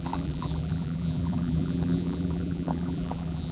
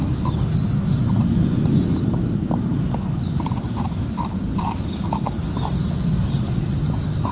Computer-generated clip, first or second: first